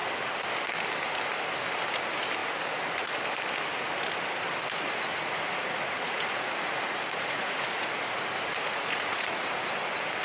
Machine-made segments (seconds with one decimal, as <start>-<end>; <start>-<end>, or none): 5.1-9.7